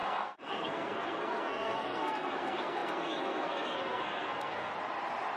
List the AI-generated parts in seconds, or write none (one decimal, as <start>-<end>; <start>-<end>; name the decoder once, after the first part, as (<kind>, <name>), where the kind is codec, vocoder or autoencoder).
0.0-4.7 (codec, SNAC)